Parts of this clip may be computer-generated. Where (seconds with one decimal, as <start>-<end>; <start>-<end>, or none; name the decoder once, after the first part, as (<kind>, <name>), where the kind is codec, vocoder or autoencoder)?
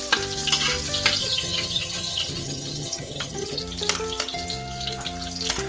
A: 1.2-3.6 (vocoder, HiFi-GAN)